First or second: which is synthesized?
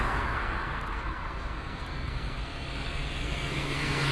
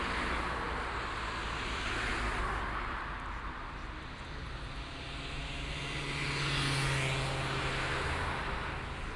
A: first